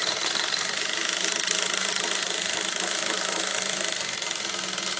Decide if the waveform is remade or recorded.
remade